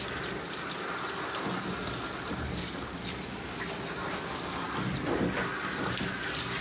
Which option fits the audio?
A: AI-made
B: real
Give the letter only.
B